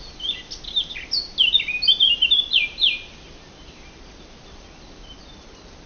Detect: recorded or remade recorded